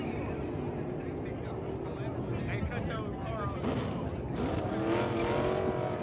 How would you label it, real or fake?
real